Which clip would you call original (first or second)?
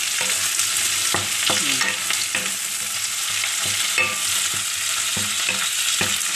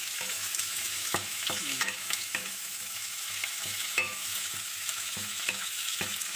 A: first